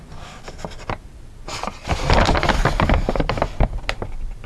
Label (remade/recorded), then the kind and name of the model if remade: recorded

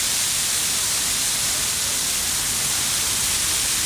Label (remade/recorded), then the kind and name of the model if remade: recorded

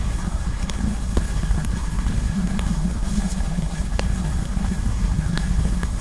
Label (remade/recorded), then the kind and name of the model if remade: remade, codec, SNAC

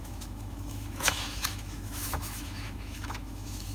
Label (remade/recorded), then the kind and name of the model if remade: remade, autoencoder, DAC-VAE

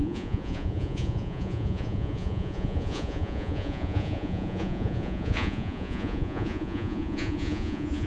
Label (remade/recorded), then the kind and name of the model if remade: remade, vocoder, Vocos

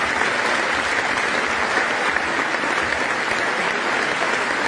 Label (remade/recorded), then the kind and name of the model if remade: recorded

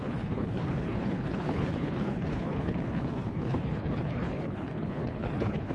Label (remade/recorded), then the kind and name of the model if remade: remade, codec, HILCodec